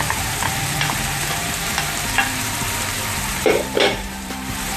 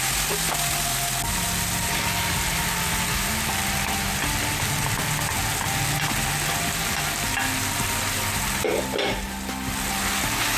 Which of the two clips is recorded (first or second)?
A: second